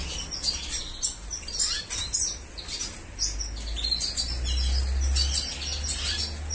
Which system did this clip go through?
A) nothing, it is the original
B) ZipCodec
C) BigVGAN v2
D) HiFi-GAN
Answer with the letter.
A